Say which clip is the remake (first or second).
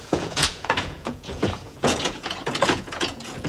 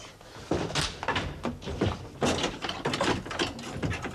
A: first